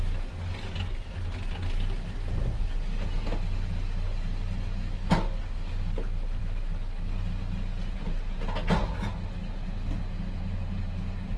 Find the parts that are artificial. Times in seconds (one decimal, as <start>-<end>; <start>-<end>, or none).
none